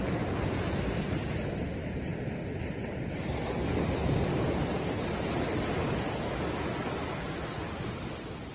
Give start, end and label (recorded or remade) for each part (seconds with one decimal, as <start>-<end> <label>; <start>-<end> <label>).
0.0-8.5 recorded